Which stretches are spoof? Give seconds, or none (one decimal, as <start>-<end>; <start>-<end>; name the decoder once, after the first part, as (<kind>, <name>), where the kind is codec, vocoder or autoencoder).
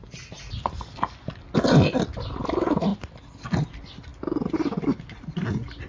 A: none